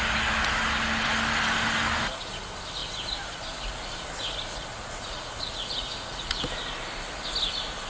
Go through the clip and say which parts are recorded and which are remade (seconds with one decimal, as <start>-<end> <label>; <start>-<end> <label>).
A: 0.0-4.7 recorded; 4.7-6.4 remade; 6.4-7.9 recorded